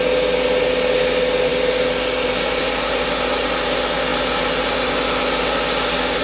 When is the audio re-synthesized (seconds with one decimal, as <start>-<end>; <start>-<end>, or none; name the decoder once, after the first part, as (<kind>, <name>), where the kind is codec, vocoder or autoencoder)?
none